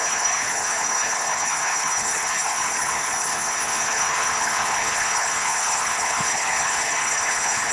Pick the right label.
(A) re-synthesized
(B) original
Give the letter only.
A